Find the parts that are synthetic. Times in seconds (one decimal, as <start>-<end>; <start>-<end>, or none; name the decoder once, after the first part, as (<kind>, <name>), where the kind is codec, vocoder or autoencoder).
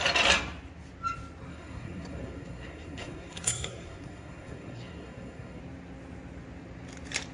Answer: 1.5-5.6 (codec, SNAC)